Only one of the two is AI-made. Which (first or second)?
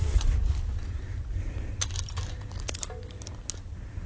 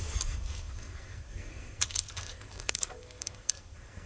second